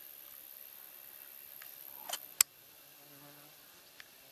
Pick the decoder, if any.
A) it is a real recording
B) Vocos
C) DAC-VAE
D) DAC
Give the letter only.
A